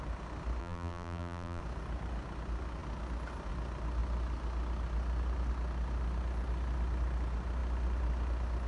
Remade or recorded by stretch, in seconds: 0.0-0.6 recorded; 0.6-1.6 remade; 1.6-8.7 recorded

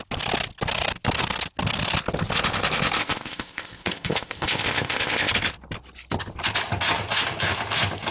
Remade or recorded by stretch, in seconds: 0.0-3.0 recorded; 3.0-5.3 remade; 5.3-8.1 recorded

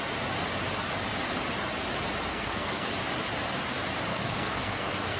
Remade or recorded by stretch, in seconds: 0.0-2.3 recorded; 2.3-2.9 remade; 2.9-4.1 recorded; 4.1-5.2 remade

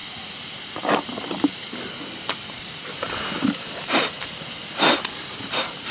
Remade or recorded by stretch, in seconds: 0.0-3.1 recorded; 3.1-5.9 remade

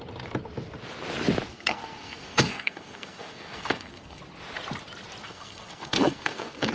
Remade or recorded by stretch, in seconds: 0.0-1.5 recorded; 1.5-4.2 remade; 4.2-5.2 recorded; 5.2-6.7 remade

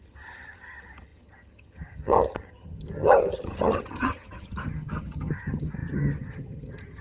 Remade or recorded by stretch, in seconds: 0.0-7.0 remade